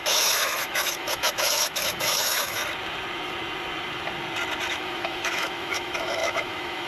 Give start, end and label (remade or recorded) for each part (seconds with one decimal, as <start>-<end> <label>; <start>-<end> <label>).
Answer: 0.0-2.6 remade; 2.6-4.7 recorded; 4.7-6.9 remade